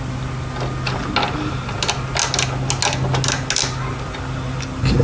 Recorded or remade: recorded